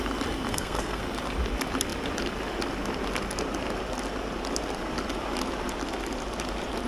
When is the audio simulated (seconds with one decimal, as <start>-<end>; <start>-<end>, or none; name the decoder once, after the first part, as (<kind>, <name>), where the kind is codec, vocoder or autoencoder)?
0.5-1.0 (codec, SNAC)